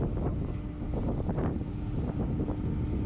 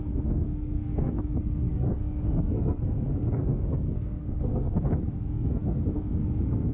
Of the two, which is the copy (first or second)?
second